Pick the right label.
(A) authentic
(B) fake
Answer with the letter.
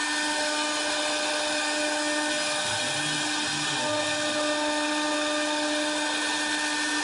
A